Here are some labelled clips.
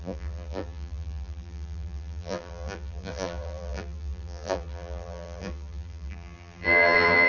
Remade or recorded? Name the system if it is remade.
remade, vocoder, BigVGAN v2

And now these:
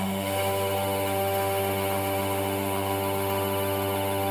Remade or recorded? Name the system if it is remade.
remade, autoencoder, DAC-VAE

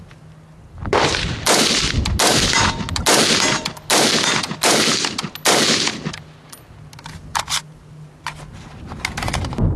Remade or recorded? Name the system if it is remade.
recorded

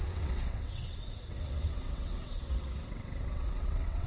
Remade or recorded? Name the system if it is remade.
remade, vocoder, WaveNeXt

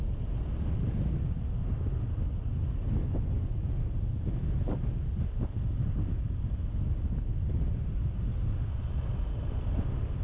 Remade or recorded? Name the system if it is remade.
recorded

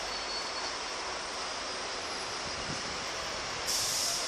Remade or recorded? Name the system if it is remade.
remade, vocoder, BigVGAN v2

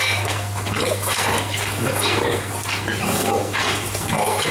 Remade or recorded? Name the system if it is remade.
remade, codec, SNAC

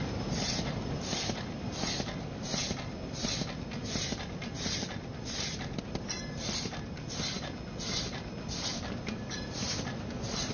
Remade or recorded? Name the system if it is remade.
recorded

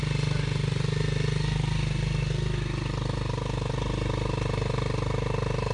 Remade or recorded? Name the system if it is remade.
recorded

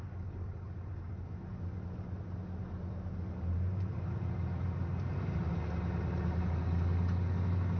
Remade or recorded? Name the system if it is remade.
recorded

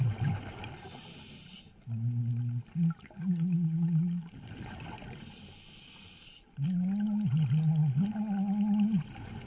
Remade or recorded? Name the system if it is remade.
recorded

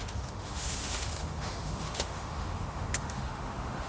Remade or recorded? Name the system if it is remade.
remade, autoencoder, DAC-VAE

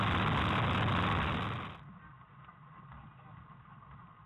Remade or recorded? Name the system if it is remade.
recorded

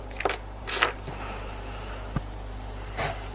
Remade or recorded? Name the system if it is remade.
recorded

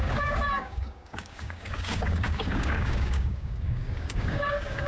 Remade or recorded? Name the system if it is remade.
remade, codec, DAC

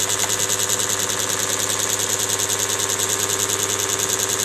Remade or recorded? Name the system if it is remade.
recorded